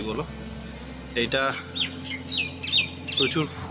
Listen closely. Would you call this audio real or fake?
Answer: real